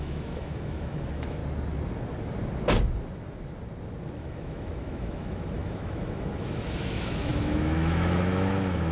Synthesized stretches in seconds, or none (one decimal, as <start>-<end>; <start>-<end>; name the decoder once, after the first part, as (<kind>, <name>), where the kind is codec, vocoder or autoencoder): 0.0-1.4 (autoencoder, DAC-VAE); 4.2-8.9